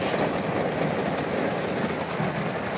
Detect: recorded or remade recorded